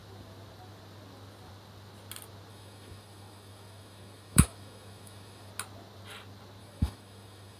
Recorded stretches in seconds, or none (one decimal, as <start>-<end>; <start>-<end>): 0.0-2.5; 5.5-6.6